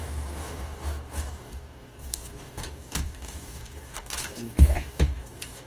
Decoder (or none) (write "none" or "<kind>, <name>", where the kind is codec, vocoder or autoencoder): codec, DAC